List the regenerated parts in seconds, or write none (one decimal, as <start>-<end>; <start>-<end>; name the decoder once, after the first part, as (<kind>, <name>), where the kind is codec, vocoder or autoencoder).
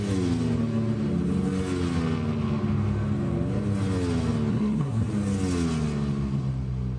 4.5-5.1 (codec, SNAC)